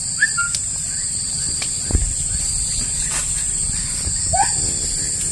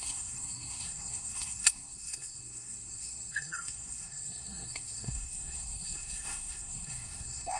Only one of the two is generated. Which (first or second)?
second